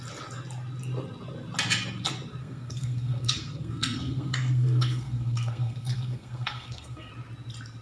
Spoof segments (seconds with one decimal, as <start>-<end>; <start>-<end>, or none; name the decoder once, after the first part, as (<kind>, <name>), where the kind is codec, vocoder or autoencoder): 2.4-7.1 (codec, SNAC)